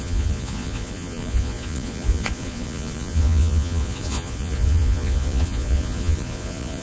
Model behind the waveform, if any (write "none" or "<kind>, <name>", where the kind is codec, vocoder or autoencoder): vocoder, Vocos